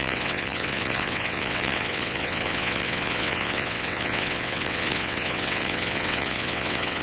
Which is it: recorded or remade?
remade